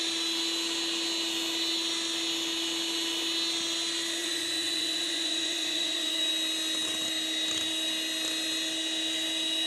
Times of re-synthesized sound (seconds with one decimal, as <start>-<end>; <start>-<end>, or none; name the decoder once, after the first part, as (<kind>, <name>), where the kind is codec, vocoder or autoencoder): 4.2-6.3 (vocoder, Vocos)